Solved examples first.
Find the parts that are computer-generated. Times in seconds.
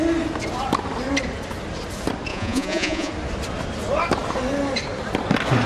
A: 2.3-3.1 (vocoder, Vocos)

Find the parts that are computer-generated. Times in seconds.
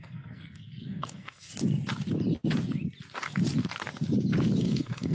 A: 0.0-1.5 (codec, SNAC); 4.6-5.1